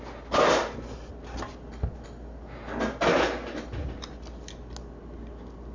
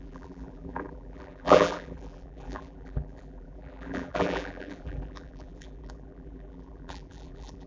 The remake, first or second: second